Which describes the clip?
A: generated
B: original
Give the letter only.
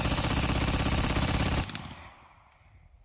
A